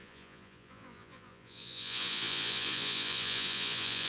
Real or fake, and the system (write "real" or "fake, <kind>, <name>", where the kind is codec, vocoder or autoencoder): fake, vocoder, Vocos